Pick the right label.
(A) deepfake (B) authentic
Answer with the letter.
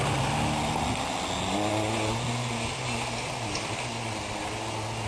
B